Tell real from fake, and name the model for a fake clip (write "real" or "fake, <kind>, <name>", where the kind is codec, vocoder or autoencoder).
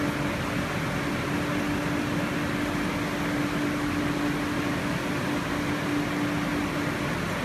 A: real